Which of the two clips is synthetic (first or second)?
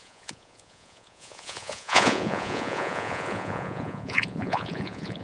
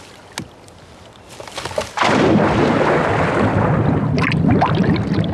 first